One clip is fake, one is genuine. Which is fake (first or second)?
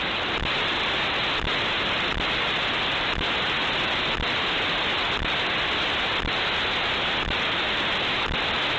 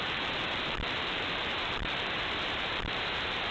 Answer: second